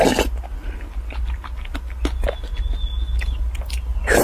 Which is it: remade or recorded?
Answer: recorded